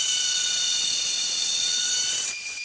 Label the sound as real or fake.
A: fake